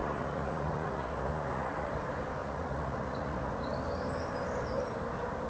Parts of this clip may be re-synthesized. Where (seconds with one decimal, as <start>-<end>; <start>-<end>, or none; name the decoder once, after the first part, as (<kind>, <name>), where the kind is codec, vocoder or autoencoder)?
0.0-1.9 (vocoder, Vocos); 2.4-3.7

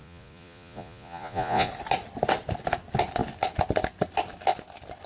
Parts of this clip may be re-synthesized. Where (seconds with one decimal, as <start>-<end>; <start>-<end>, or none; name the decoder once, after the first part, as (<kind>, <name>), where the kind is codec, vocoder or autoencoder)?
0.0-1.7 (vocoder, Vocos)